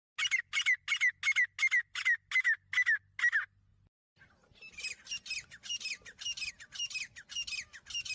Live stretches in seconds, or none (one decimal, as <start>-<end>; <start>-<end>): 0.0-8.1